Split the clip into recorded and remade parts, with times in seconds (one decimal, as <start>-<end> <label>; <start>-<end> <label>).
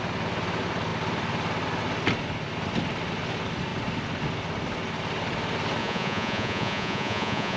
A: 0.0-5.8 recorded; 5.8-7.6 remade